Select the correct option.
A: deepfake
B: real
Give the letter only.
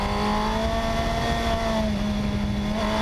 B